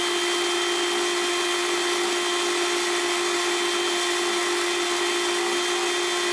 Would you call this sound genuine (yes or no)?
yes